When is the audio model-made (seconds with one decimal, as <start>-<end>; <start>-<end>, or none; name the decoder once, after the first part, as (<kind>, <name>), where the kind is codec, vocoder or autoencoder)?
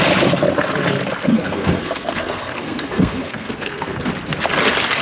1.3-4.1 (codec, SNAC)